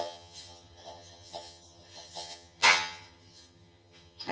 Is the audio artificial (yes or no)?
yes